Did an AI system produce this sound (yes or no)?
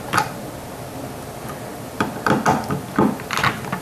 no